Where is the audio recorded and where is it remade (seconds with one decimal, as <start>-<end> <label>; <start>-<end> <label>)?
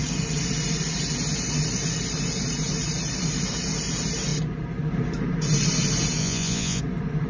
0.0-6.2 recorded; 6.2-6.8 remade; 6.8-7.3 recorded